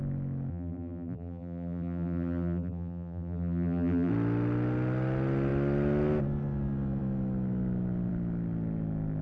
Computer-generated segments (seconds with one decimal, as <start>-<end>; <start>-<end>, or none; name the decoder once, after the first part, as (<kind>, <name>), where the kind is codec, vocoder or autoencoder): 0.5-4.1 (vocoder, BigVGAN v2)